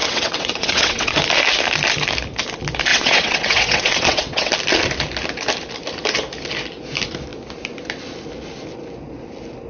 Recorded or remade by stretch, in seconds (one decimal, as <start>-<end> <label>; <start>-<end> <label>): 0.0-1.2 remade; 1.2-2.9 recorded; 2.9-4.5 remade; 4.5-9.7 recorded